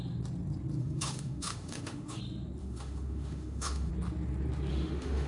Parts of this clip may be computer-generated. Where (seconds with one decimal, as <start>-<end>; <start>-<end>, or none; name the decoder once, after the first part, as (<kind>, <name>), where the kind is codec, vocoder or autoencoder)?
0.8-2.2 (autoencoder, DAC-VAE); 2.6-3.9; 4.7-5.3